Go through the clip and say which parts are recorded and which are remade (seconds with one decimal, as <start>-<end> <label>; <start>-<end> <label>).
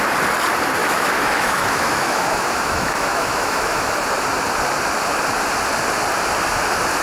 0.0-0.8 recorded; 0.8-3.9 remade; 3.9-7.0 recorded